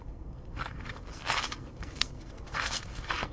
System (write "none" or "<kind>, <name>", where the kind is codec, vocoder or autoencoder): codec, SNAC